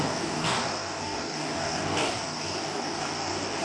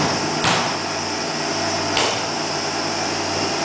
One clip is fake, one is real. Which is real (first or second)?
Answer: second